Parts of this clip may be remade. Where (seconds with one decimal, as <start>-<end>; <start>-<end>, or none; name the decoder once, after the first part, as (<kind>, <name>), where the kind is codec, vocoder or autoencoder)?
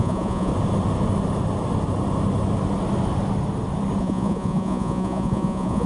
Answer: 0.0-0.5 (vocoder, Vocos); 4.0-5.9